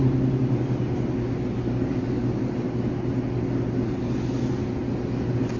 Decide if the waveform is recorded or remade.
recorded